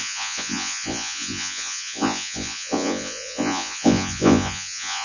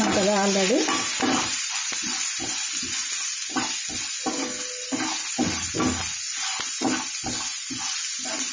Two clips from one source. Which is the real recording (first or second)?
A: second